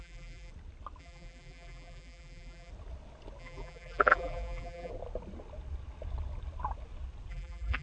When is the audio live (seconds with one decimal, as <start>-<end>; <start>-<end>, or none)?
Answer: 0.5-1.0; 2.7-3.4; 4.9-7.3